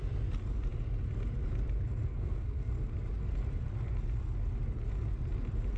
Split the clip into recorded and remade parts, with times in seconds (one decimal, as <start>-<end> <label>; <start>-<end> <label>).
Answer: 0.0-2.1 recorded; 2.1-2.7 remade; 2.7-5.8 recorded